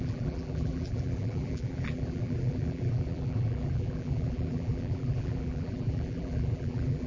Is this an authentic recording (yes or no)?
no